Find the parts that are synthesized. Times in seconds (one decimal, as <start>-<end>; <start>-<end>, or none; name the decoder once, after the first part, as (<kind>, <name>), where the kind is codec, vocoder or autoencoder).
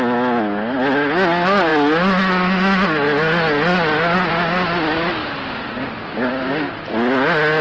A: none